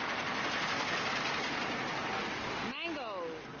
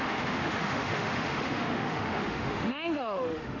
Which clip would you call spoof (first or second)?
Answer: second